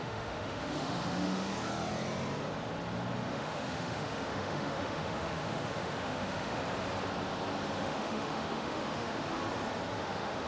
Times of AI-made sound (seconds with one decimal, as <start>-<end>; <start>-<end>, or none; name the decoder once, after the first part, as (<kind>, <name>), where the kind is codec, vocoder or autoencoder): 0.0-1.5 (autoencoder, DAC-VAE); 3.3-6.6; 7.8-9.4; 10.0-10.5